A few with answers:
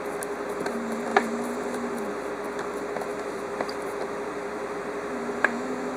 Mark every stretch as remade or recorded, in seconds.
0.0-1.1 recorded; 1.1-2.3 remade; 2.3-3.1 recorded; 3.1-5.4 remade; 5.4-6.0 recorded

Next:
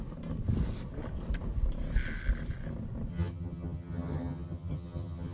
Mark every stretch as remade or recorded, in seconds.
0.0-3.1 recorded; 3.1-5.3 remade